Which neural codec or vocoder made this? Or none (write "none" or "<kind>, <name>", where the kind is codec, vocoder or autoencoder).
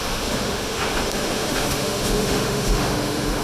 autoencoder, DAC-VAE